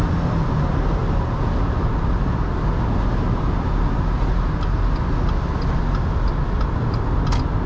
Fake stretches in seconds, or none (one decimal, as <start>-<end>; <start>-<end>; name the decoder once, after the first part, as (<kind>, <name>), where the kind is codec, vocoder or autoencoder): none